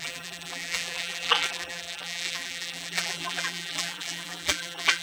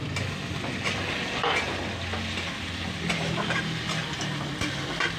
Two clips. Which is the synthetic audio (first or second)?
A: first